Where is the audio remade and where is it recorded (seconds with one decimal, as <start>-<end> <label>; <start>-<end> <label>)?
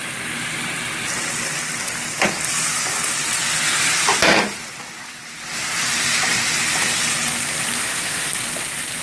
0.0-7.8 recorded; 7.8-8.3 remade; 8.3-9.0 recorded